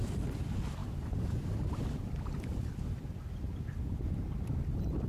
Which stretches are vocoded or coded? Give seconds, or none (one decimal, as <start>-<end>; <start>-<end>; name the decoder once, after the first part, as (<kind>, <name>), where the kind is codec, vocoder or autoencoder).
none